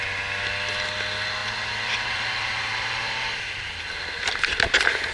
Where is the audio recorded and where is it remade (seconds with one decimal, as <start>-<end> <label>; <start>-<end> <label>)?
0.0-1.4 recorded; 1.4-4.0 remade; 4.0-5.1 recorded